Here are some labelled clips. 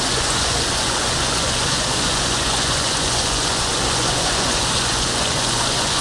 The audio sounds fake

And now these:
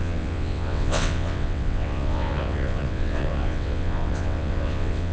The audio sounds fake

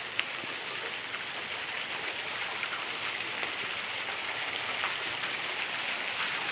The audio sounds real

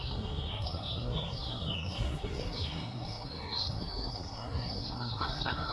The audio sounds fake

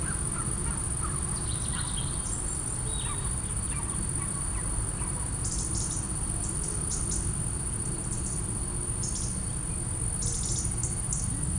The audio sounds real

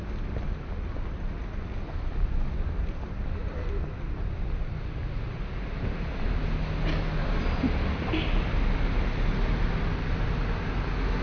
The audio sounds real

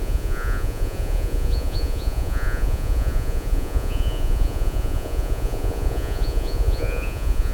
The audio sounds fake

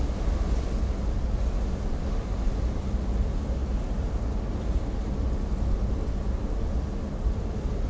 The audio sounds real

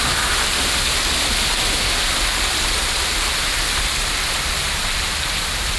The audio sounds real